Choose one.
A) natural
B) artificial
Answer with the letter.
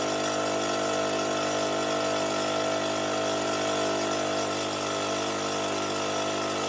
A